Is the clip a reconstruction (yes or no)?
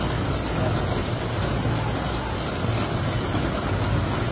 no